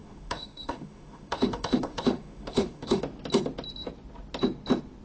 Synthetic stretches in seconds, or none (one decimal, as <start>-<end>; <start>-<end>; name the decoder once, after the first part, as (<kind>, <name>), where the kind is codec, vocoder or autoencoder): 0.0-3.0 (autoencoder, DAC-VAE)